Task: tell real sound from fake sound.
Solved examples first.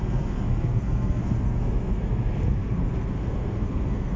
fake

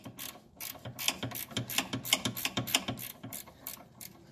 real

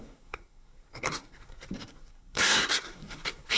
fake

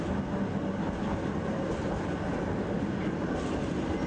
real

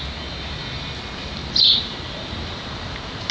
real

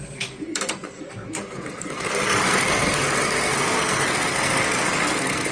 fake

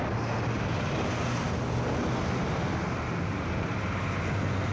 real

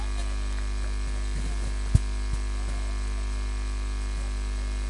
real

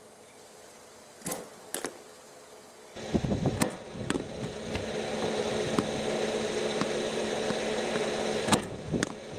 real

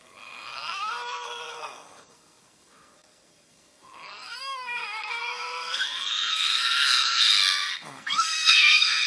fake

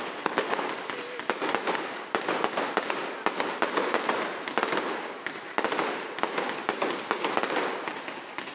real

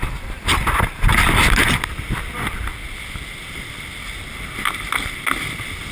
real